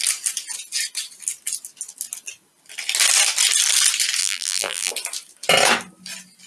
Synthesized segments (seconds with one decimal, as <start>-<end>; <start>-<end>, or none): 4.2-4.9